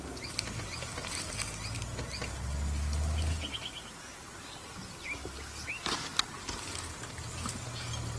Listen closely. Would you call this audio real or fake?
real